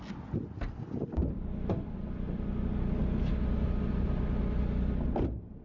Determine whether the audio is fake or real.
real